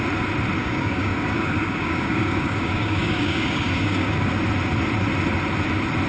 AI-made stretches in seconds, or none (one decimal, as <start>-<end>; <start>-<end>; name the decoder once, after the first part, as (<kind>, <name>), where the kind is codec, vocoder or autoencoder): 0.6-4.3 (codec, DAC)